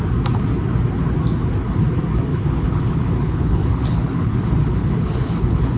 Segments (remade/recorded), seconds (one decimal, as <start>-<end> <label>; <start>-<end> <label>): 0.0-2.3 recorded; 2.3-5.8 remade